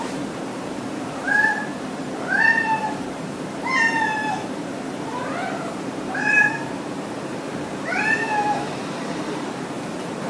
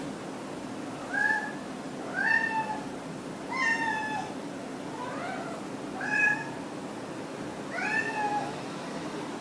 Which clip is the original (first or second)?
second